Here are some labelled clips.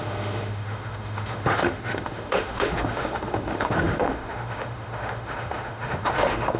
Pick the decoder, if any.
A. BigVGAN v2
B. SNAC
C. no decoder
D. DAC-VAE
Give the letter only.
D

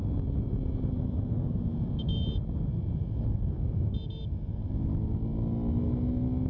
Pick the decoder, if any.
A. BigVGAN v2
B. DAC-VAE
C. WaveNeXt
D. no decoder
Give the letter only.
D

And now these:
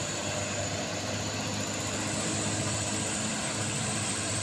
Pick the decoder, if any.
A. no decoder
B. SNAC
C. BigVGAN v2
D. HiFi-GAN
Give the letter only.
C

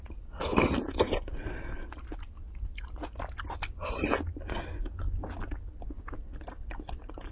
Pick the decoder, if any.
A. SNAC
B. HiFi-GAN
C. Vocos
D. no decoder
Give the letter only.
D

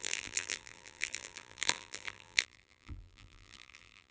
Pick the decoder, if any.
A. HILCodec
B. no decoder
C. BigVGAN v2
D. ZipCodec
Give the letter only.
C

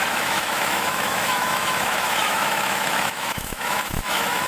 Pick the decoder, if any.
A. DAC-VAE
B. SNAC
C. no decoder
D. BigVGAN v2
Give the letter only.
A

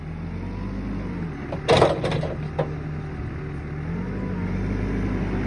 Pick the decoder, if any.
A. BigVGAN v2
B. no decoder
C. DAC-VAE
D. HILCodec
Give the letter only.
B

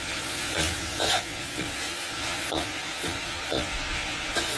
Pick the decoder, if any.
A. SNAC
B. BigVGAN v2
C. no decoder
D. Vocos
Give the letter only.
D